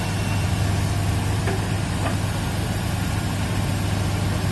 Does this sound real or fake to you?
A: real